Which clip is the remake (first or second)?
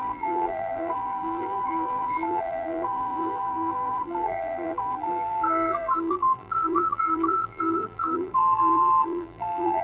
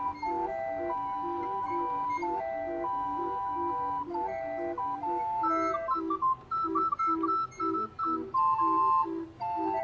first